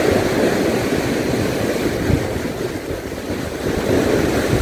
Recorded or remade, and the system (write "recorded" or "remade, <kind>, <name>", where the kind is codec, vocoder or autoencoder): recorded